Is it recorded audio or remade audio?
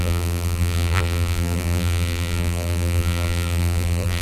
remade